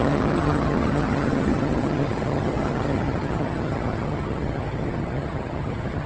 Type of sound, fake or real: fake